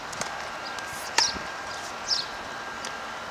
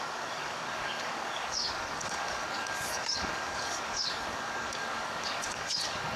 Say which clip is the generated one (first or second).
second